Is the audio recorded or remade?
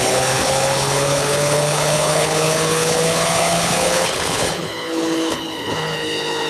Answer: remade